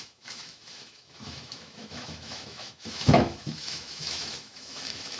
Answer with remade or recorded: remade